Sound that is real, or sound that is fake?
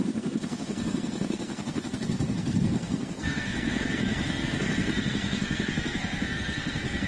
fake